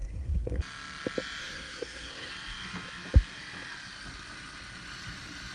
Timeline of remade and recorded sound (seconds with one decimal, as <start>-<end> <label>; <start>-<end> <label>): 0.0-0.6 remade; 0.6-1.4 recorded; 1.4-2.3 remade; 2.3-5.5 recorded